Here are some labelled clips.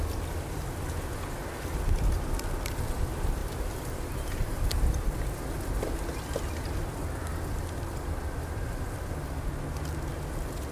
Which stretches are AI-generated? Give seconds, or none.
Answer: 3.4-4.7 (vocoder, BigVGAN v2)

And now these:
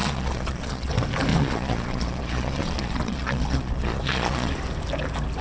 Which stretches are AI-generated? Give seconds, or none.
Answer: 0.0-0.9 (vocoder, Vocos); 1.3-4.5

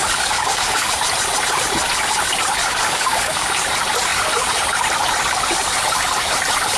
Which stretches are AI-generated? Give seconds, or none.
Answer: 0.0-0.9 (codec, DAC); 2.6-3.5

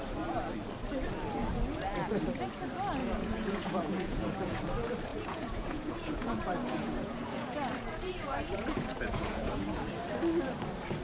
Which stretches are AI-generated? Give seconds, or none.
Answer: 3.0-4.6 (vocoder, Vocos); 5.1-9.9

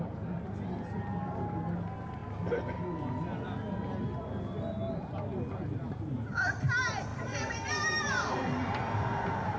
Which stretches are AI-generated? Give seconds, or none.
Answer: 7.1-9.6 (vocoder, BigVGAN v2)